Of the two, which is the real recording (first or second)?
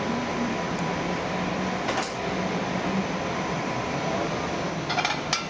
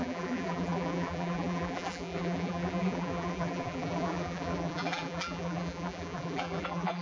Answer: first